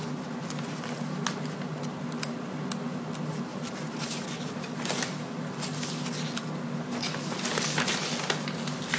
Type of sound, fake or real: real